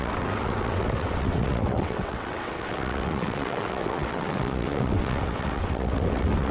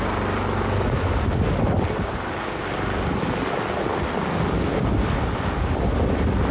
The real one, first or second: second